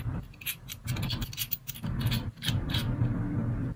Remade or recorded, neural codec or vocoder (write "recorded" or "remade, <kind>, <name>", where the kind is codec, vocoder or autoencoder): recorded